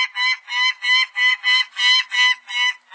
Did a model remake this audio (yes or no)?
no